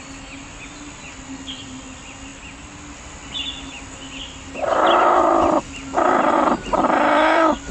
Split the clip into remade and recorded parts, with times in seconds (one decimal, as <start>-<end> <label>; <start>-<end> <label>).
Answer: 0.0-7.7 recorded